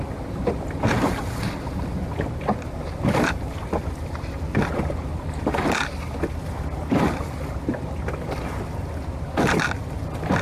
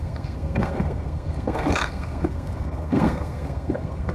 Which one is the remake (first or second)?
second